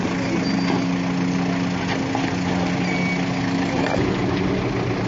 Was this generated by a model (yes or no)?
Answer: no